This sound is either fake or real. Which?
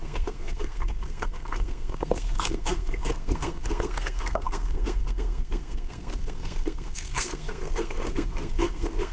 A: fake